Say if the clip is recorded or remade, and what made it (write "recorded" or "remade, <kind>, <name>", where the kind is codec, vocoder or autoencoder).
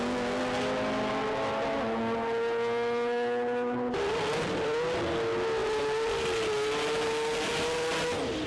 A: recorded